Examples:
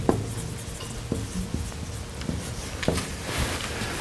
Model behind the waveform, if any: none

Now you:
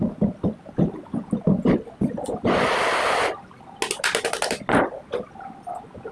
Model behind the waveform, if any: none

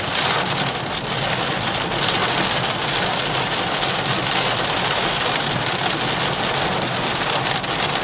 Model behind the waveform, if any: none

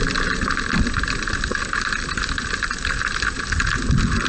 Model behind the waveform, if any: none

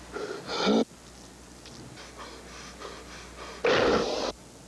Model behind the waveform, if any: none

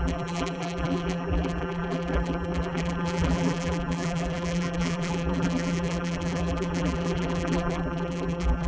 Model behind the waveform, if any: vocoder, BigVGAN v2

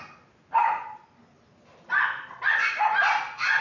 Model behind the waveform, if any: none